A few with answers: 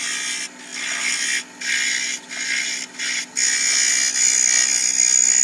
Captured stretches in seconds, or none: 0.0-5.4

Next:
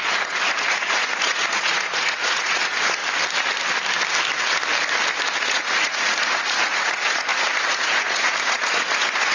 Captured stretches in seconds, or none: 3.0-5.4

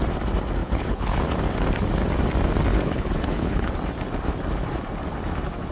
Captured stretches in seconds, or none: 0.0-0.6; 1.2-2.7; 3.7-5.7